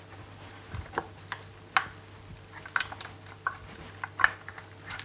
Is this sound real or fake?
real